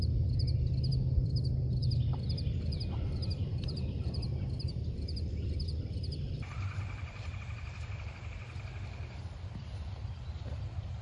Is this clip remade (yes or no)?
yes